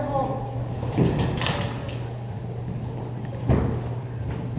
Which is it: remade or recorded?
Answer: recorded